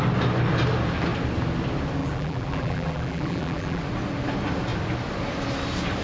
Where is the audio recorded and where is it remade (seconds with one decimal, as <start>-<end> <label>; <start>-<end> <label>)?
0.0-2.0 recorded; 2.0-3.8 remade; 3.8-6.0 recorded